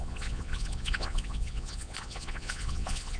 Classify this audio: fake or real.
fake